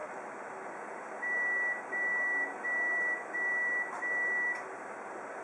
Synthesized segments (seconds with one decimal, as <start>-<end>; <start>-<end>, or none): 0.0-0.5